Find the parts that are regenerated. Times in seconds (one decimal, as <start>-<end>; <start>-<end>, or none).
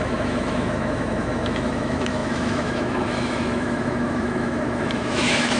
0.0-5.6